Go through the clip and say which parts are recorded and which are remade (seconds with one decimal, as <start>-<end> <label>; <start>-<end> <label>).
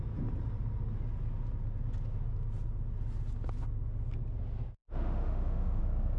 0.0-4.8 recorded; 4.8-5.8 remade; 5.8-6.2 recorded